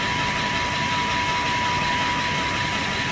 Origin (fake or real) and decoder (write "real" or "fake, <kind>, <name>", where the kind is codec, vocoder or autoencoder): real